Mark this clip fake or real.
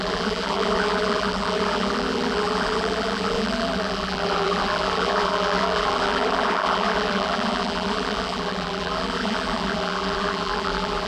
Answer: fake